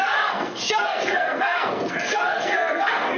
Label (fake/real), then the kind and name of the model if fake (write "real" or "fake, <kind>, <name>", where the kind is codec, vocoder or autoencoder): fake, codec, SNAC